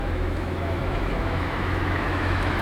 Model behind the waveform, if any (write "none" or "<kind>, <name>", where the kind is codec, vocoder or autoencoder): autoencoder, DAC-VAE